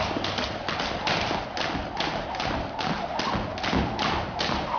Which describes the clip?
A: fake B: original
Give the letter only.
B